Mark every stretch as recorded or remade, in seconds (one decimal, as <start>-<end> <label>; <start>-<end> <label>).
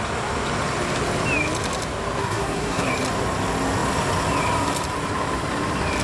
0.0-2.2 recorded; 2.2-2.9 remade; 2.9-6.0 recorded